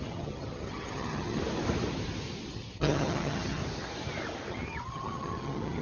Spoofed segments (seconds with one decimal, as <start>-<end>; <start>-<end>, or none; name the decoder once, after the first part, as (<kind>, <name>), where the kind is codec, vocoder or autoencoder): 0.0-1.4 (vocoder, HiFi-GAN); 2.5-3.6; 4.5-5.8